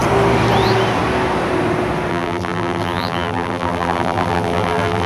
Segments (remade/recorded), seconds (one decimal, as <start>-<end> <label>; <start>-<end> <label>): 0.0-2.1 recorded; 2.1-5.1 remade